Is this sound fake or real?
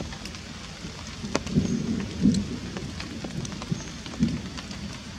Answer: real